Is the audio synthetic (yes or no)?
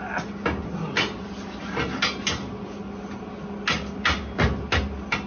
no